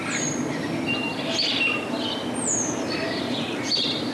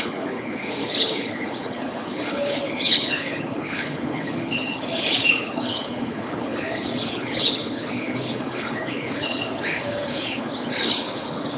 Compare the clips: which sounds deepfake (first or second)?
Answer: second